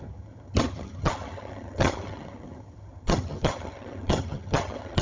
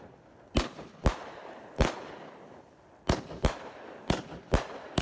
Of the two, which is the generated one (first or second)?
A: first